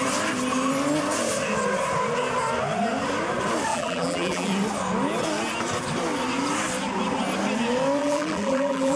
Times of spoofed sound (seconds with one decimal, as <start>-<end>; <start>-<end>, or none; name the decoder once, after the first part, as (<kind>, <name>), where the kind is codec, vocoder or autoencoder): 3.7-4.5 (vocoder, BigVGAN v2); 8.0-9.0